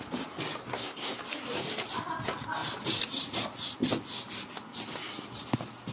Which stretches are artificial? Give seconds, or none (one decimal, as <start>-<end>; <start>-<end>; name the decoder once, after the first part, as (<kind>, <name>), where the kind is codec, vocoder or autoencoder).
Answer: 0.6-1.2 (codec, SNAC)